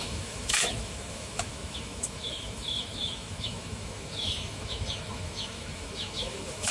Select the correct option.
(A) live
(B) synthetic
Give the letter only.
B